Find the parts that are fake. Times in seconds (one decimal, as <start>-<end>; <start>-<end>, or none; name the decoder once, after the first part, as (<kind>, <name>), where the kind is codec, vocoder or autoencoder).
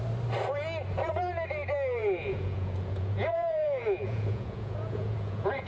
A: 2.0-5.7 (vocoder, Vocos)